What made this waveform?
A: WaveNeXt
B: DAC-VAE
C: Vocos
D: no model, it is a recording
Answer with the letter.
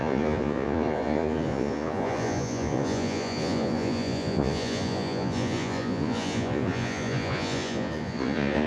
C